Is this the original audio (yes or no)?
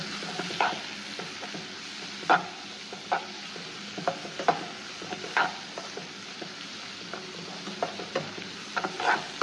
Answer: yes